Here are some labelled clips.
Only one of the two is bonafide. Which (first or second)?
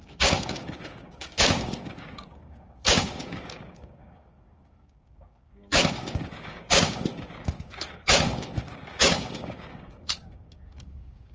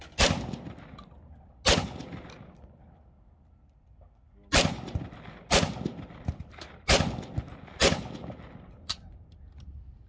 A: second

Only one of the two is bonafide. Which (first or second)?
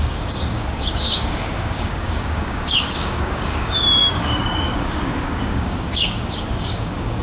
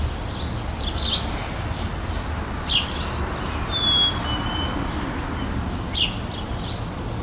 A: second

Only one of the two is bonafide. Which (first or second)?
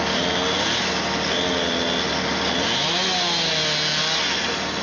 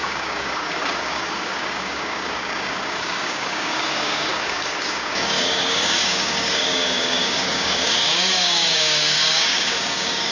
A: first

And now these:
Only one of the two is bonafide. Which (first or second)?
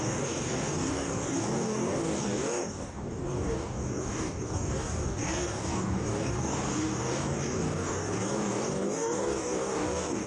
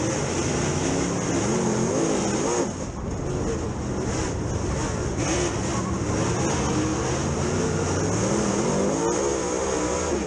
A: second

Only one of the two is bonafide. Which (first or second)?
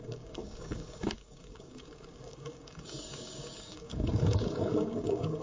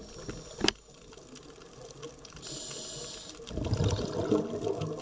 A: second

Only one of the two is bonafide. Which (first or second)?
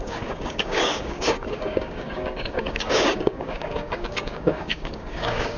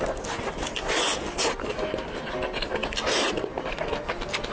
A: second